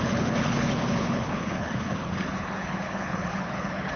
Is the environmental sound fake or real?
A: fake